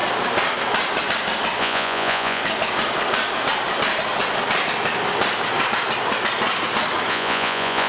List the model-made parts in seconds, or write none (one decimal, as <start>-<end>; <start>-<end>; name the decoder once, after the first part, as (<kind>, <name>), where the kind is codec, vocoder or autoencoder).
1.6-2.4 (vocoder, Vocos); 7.1-7.9